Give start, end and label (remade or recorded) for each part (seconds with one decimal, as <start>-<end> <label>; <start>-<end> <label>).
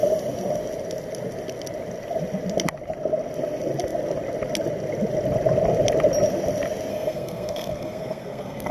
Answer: 0.0-6.9 recorded; 6.9-8.7 remade